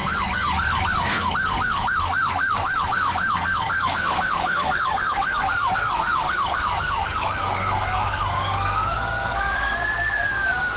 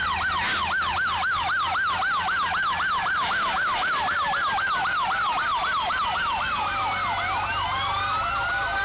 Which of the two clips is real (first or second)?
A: second